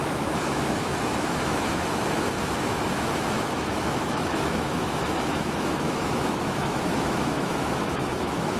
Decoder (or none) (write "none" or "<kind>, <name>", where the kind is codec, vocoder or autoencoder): autoencoder, DAC-VAE